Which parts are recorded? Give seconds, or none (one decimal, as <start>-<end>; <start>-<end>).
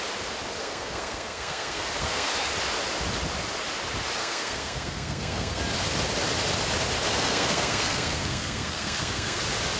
0.0-0.6; 2.3-4.2; 5.6-7.1; 9.4-9.8